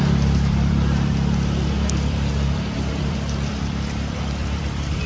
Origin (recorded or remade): remade